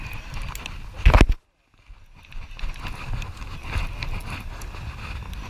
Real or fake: real